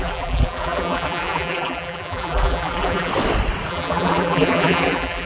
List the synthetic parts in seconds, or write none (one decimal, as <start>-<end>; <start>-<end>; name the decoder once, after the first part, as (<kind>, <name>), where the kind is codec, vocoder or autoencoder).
0.0-3.1 (vocoder, BigVGAN v2); 3.7-5.3